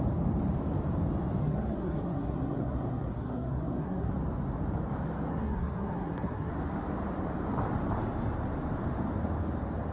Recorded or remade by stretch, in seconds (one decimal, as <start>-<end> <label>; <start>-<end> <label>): 0.0-1.4 recorded; 1.4-4.1 remade; 4.1-5.3 recorded; 5.3-6.5 remade; 6.5-9.9 recorded